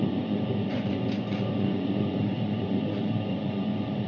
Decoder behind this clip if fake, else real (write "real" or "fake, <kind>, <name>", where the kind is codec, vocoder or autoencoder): fake, vocoder, Vocos